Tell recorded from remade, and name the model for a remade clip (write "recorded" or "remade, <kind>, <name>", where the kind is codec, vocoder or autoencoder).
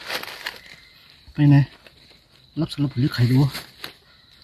recorded